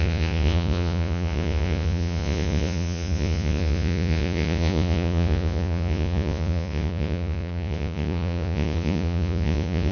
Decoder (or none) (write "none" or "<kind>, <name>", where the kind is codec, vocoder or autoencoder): vocoder, Vocos